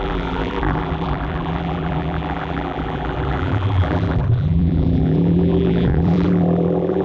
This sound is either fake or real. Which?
fake